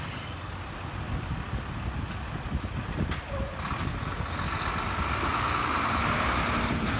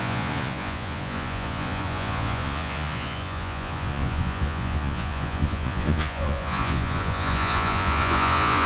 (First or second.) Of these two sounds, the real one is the first